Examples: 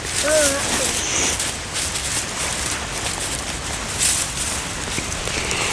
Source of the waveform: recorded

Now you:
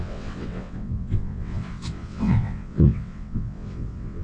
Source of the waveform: remade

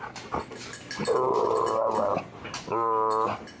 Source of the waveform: recorded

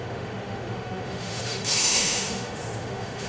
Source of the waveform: remade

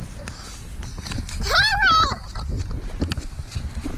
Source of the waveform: recorded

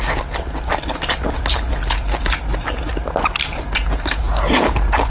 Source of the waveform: recorded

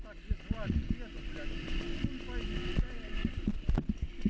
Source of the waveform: recorded